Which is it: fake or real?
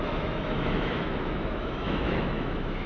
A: fake